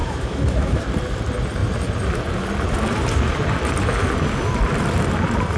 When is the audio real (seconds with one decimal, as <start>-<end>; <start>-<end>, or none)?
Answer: 0.8-5.6